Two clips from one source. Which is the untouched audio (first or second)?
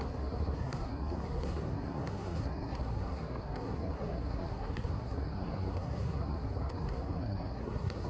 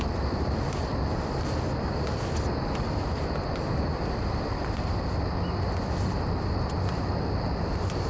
second